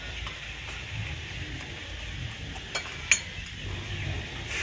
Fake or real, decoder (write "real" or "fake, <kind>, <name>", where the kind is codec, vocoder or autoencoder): real